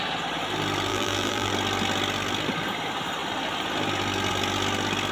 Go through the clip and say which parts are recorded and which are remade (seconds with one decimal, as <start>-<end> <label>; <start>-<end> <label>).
0.0-0.9 recorded; 0.9-1.5 remade; 1.5-5.1 recorded